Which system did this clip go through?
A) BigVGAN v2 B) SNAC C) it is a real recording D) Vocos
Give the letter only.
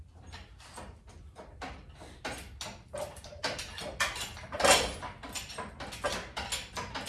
C